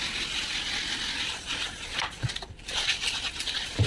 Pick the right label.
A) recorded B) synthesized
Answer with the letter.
A